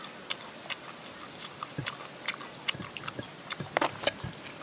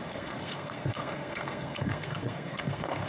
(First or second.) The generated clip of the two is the second